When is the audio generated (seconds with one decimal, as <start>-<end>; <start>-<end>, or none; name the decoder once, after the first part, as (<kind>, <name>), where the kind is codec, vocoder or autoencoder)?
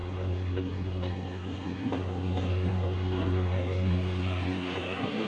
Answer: 0.0-5.3 (codec, SNAC)